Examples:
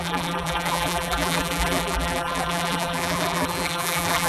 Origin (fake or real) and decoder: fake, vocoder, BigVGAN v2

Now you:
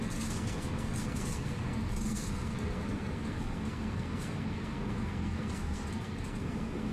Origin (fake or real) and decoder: fake, codec, SNAC